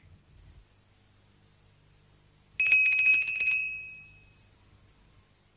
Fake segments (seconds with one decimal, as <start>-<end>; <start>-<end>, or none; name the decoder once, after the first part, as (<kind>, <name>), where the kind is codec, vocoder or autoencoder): none